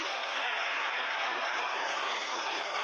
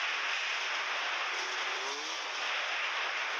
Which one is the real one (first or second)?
second